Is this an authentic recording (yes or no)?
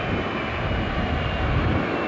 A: yes